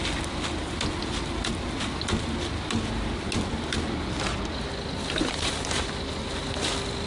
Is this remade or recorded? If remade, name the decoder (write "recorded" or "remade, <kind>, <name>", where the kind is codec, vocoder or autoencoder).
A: recorded